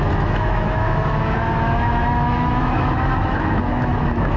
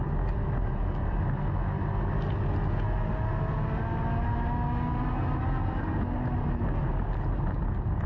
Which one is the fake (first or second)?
first